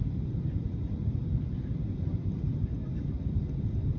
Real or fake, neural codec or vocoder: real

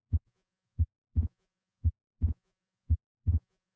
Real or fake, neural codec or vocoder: fake, vocoder, Vocos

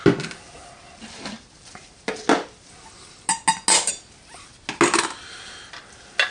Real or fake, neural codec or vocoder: real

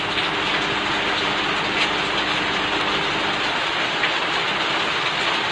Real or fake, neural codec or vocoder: real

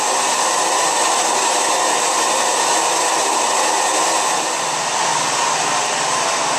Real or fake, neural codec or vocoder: real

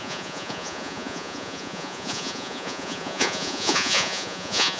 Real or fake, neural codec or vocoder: fake, vocoder, Vocos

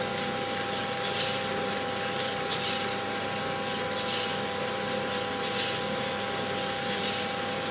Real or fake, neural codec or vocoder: real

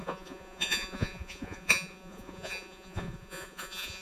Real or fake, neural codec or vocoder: fake, vocoder, Vocos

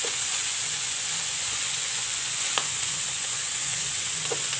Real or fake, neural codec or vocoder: fake, vocoder, Vocos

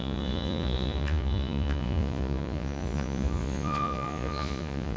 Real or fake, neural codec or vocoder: fake, vocoder, Vocos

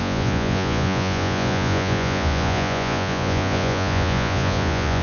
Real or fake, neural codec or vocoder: fake, vocoder, Vocos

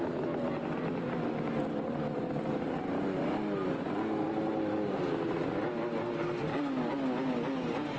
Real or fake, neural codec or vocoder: real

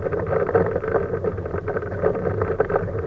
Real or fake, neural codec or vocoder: real